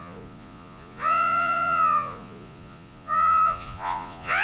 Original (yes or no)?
no